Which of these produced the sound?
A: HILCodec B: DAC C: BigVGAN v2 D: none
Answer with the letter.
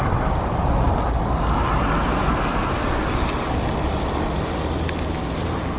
D